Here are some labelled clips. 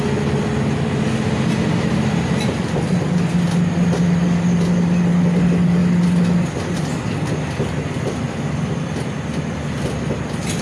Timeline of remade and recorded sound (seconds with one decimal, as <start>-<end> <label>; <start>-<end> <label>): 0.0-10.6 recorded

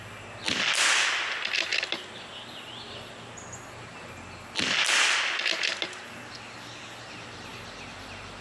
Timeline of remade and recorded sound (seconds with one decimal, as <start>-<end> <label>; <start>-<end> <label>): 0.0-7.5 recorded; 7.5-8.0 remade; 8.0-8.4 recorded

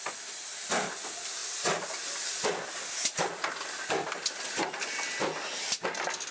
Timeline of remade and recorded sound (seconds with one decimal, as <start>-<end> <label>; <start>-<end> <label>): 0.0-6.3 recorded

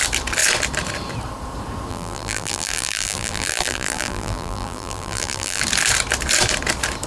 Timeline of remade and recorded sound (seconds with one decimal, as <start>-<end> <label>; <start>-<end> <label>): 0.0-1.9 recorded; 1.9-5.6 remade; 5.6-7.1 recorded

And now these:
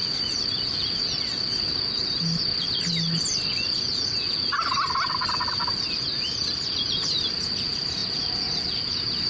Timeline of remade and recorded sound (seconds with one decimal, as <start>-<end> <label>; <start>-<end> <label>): 0.0-9.3 recorded